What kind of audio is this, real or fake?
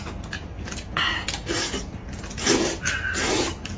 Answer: real